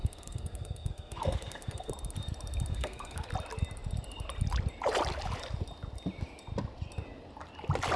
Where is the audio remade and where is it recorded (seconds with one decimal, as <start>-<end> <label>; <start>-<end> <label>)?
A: 0.0-1.9 remade; 1.9-2.7 recorded; 2.7-3.3 remade; 3.3-8.0 recorded